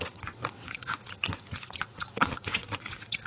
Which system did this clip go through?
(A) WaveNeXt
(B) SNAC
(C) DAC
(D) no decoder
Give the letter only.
A